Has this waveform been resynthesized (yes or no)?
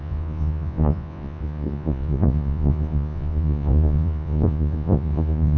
yes